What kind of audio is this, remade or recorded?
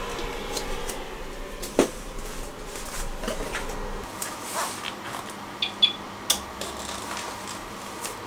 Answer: recorded